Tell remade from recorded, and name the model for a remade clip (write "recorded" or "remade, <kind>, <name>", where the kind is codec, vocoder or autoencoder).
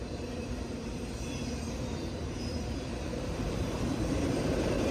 remade, vocoder, BigVGAN v2